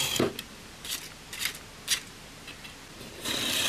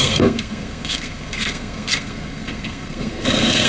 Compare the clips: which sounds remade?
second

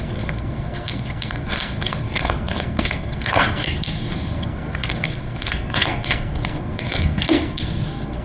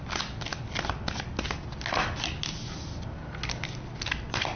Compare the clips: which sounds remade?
first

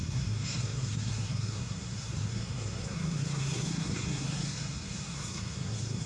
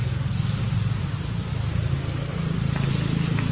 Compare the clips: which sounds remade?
first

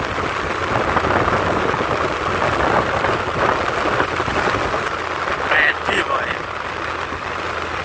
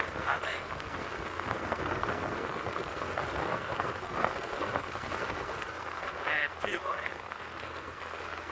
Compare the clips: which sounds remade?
second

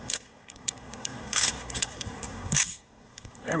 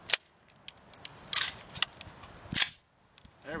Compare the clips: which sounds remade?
first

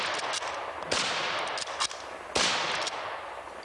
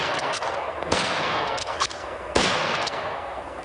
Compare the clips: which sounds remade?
second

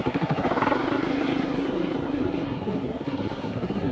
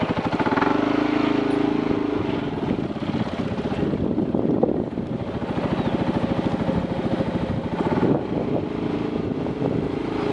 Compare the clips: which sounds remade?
first